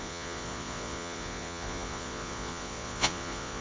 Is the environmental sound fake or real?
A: fake